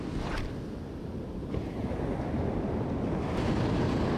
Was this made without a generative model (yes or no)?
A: yes